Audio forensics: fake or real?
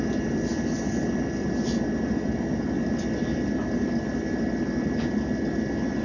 real